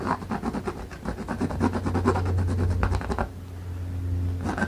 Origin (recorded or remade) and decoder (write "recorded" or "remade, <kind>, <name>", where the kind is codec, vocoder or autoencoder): recorded